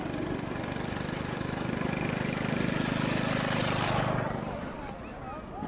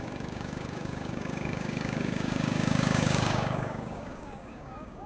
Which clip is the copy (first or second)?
second